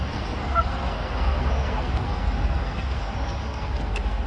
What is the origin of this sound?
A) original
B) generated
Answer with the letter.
B